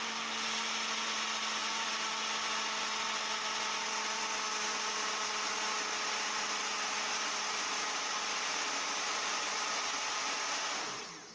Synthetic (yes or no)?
no